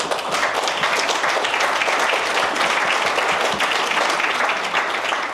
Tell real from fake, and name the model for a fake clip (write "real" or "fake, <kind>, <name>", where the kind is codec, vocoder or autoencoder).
real